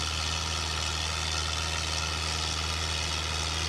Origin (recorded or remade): recorded